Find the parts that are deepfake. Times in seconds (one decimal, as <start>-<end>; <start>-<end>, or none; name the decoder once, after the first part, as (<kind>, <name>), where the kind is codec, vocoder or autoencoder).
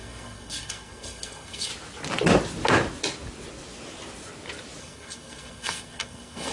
0.0-1.7 (codec, SNAC); 4.8-6.5